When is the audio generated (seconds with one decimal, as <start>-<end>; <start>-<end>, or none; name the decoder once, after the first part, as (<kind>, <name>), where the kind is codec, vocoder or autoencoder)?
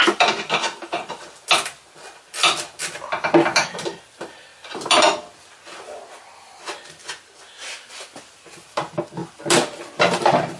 none